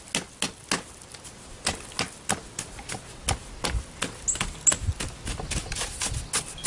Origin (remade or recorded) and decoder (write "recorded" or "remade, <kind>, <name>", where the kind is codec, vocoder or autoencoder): recorded